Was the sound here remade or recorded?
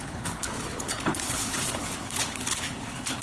remade